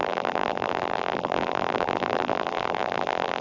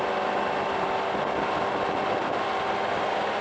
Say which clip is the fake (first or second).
first